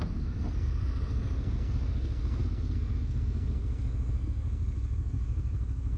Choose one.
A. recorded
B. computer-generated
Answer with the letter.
B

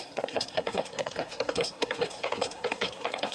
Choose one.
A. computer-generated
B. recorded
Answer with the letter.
A